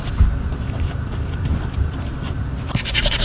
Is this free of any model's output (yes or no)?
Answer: no